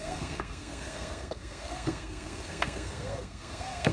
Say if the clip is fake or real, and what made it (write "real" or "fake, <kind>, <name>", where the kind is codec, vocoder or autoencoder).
fake, codec, SNAC